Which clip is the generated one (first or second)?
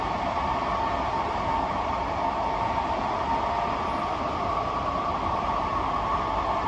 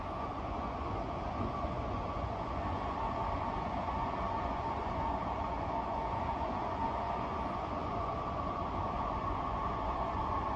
second